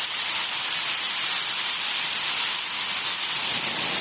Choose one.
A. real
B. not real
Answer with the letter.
A